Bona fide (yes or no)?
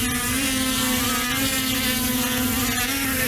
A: yes